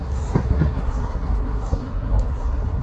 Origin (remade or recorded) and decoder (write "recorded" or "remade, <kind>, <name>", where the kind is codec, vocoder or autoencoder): remade, codec, SNAC